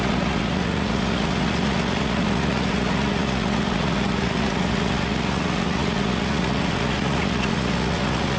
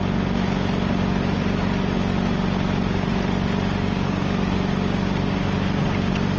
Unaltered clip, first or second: second